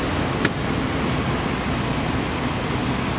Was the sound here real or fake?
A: real